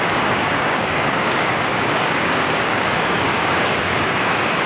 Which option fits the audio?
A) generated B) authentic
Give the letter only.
A